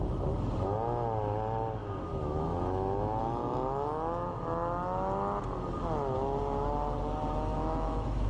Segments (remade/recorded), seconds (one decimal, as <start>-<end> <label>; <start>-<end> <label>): 0.0-1.8 recorded; 1.8-3.2 remade; 3.2-7.5 recorded; 7.5-8.3 remade